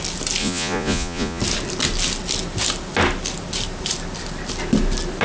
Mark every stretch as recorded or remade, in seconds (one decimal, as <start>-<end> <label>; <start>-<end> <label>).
0.0-0.4 recorded; 0.4-1.4 remade; 1.4-5.2 recorded